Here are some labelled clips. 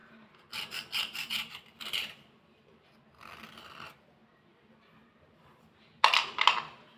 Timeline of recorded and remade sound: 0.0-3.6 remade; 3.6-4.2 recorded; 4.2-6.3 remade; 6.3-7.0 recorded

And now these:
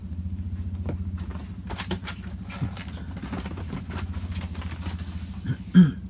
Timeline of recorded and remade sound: 0.0-6.1 recorded

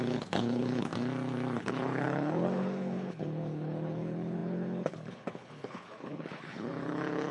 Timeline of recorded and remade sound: 0.0-0.9 remade; 0.9-1.6 recorded; 1.6-7.3 remade